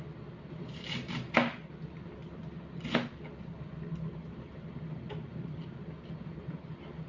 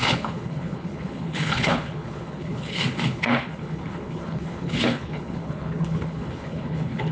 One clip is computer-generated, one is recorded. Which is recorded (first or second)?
first